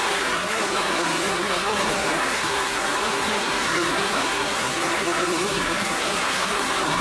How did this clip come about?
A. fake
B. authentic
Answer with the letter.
A